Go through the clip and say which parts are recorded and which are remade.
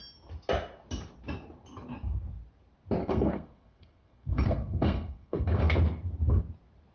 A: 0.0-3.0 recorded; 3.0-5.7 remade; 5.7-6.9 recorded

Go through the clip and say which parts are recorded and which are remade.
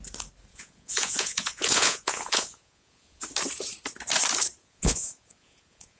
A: 0.0-0.5 recorded; 0.5-3.2 remade; 3.2-4.6 recorded; 4.6-6.0 remade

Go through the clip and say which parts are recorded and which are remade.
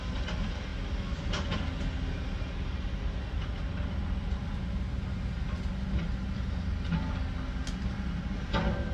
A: 0.0-8.9 recorded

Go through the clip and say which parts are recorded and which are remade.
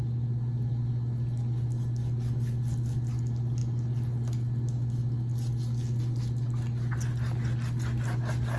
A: 0.0-8.6 recorded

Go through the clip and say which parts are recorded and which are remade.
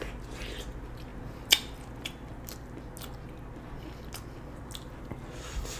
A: 0.0-5.8 recorded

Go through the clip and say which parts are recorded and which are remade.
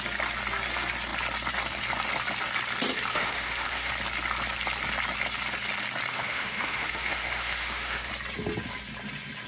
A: 0.0-3.1 recorded; 3.1-3.9 remade; 3.9-6.1 recorded; 6.1-8.1 remade; 8.1-9.5 recorded